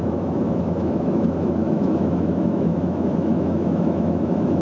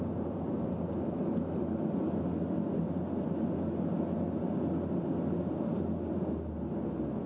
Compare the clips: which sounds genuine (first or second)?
second